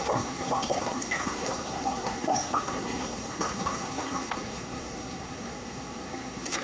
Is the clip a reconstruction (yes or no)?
yes